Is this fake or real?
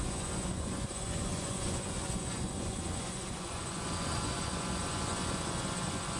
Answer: fake